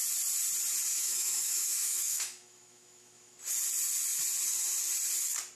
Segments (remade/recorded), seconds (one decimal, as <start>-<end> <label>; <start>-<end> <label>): 0.0-0.9 recorded; 0.9-3.4 remade; 3.4-5.6 recorded